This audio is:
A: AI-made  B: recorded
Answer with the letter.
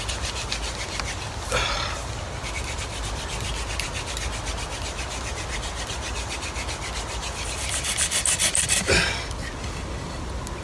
B